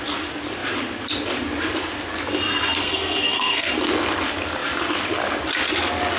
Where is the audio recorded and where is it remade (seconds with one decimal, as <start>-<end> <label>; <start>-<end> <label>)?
0.0-2.8 recorded; 2.8-3.7 remade; 3.7-6.2 recorded